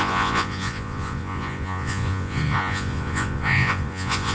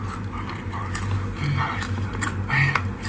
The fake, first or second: first